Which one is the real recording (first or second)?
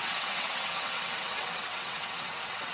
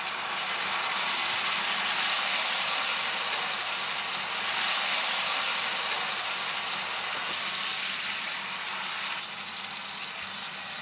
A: second